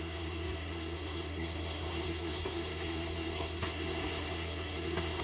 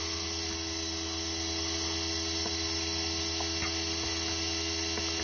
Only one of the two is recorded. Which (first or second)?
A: second